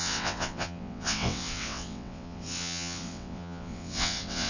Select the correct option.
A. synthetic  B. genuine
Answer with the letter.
A